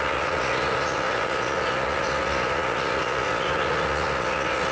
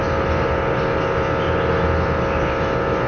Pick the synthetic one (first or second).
first